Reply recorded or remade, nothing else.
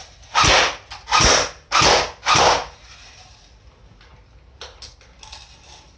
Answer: recorded